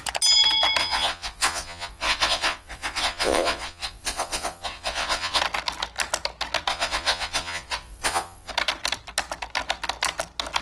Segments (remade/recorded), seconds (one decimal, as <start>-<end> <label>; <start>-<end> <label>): 0.0-0.8 recorded; 0.8-5.4 remade; 5.4-6.7 recorded; 6.7-8.5 remade; 8.5-10.6 recorded